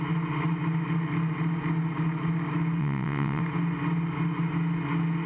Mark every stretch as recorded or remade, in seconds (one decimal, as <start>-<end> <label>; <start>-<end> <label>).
0.0-2.8 recorded; 2.8-3.4 remade; 3.4-5.3 recorded